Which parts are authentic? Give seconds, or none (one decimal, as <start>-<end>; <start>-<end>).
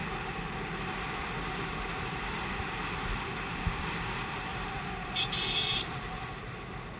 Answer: 0.0-4.5; 6.4-7.0